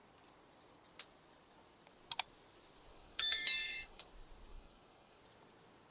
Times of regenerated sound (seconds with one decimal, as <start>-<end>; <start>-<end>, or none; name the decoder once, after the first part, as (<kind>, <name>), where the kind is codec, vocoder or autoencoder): 2.9-4.1 (codec, DAC); 4.5-5.2